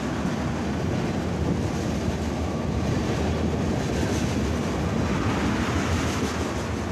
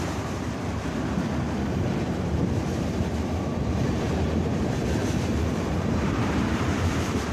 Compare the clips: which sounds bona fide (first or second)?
first